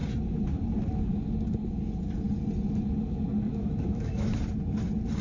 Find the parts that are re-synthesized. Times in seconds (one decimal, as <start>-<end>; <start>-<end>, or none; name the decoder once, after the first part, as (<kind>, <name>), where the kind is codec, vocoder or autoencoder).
3.5-4.4 (autoencoder, DAC-VAE)